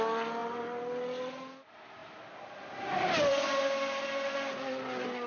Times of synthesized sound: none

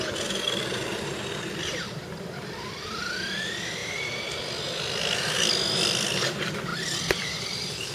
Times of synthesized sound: 0.0-3.8 (vocoder, BigVGAN v2); 5.4-7.9

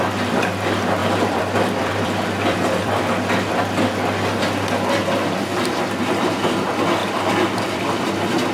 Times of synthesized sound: 1.0-3.0 (vocoder, BigVGAN v2); 7.0-8.1

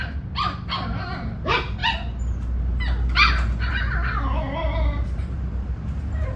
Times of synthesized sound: none

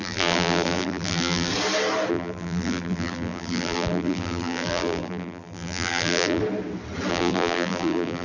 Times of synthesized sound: 0.0-1.5 (vocoder, BigVGAN v2); 2.1-6.4; 7.1-8.2

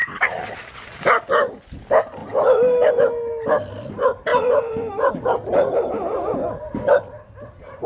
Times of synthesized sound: 0.0-1.0 (vocoder, BigVGAN v2); 2.2-2.9; 4.3-5.1; 5.5-6.2